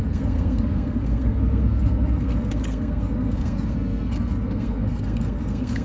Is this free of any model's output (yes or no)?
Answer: no